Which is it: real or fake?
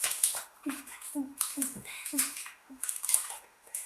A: fake